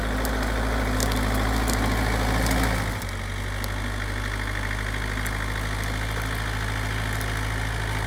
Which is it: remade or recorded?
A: recorded